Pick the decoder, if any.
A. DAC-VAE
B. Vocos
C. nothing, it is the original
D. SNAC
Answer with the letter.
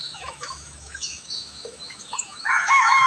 A